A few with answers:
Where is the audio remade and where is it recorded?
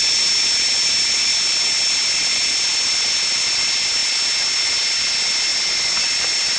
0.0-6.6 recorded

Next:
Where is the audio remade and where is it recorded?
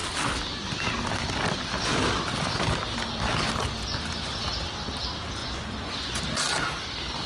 0.0-5.4 recorded; 5.4-6.2 remade; 6.2-7.3 recorded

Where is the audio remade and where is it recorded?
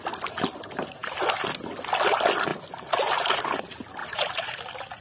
0.0-4.0 recorded; 4.0-4.6 remade; 4.6-5.0 recorded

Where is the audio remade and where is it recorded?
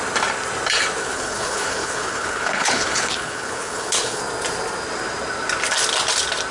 0.0-1.0 recorded; 1.0-4.2 remade; 4.2-6.5 recorded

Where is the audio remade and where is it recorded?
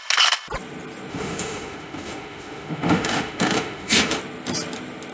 0.0-1.1 recorded; 1.1-4.2 remade; 4.2-5.1 recorded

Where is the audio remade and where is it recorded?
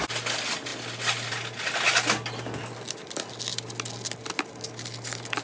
0.0-5.4 recorded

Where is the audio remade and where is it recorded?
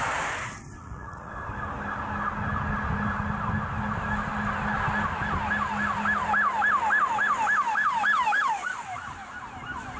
0.0-0.8 recorded; 0.8-1.3 remade; 1.3-10.0 recorded